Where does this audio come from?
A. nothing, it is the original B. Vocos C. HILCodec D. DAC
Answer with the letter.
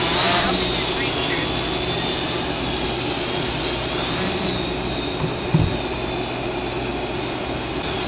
A